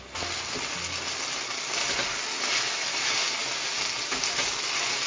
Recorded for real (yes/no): yes